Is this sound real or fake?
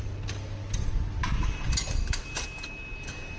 real